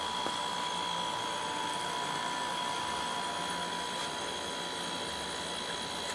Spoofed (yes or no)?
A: no